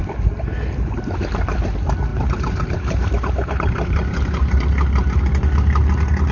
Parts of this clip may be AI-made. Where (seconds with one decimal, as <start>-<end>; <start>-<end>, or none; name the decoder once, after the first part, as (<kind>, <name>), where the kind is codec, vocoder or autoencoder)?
2.1-5.2 (vocoder, BigVGAN v2)

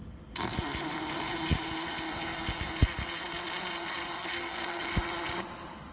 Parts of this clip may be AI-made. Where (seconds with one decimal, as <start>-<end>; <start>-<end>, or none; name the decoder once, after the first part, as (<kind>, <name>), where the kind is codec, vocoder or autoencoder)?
4.2-4.9 (codec, SNAC)

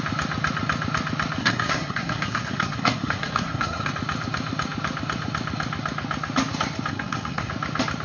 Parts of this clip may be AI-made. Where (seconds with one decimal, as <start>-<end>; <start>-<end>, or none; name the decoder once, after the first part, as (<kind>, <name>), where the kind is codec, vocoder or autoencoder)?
1.4-3.9 (codec, SNAC); 6.9-7.5

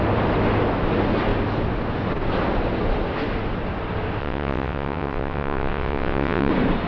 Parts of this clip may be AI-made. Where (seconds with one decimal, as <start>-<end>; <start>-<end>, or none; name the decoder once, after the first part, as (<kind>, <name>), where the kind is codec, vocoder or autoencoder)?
4.2-6.5 (vocoder, WaveNeXt)

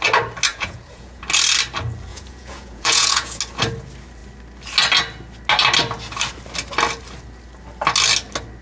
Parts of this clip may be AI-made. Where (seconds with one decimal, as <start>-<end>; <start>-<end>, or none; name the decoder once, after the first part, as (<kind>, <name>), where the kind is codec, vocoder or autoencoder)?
0.5-1.2 (vocoder, Vocos); 2.1-3.4

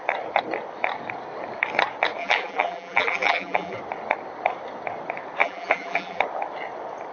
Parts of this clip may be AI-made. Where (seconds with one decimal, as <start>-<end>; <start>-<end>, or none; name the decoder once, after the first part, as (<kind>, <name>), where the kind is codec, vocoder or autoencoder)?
2.2-3.8 (vocoder, BigVGAN v2); 5.4-6.2

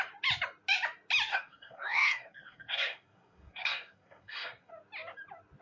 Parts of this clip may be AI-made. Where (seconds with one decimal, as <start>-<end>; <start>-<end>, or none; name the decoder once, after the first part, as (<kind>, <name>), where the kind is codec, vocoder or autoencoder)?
1.3-4.7 (codec, SNAC)